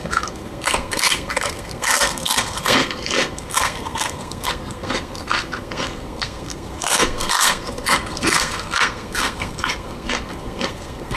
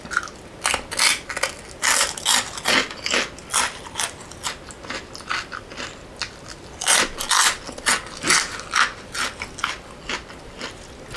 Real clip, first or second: second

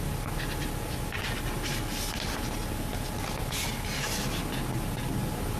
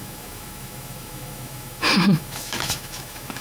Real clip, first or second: first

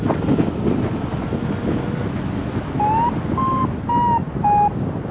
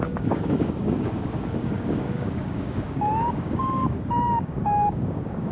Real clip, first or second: first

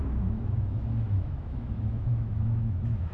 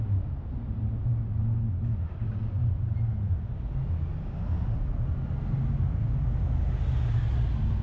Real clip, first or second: second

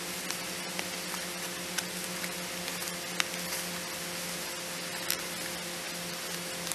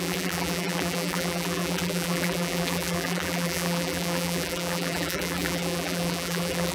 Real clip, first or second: first